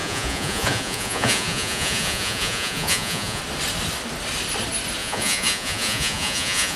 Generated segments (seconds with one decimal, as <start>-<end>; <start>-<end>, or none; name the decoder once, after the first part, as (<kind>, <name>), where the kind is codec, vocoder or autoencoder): 0.0-3.4 (vocoder, Vocos); 5.0-6.8